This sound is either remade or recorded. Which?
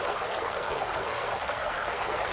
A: remade